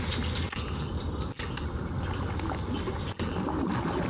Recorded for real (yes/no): yes